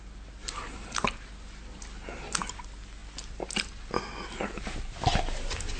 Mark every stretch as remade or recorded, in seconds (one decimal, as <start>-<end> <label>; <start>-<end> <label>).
0.0-5.8 recorded